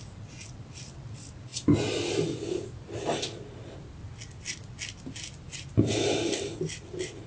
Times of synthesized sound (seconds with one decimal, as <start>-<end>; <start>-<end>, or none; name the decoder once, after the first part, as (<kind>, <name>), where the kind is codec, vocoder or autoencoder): none